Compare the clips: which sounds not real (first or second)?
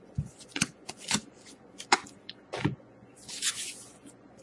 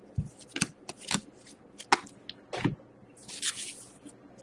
first